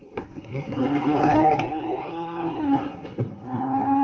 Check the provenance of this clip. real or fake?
fake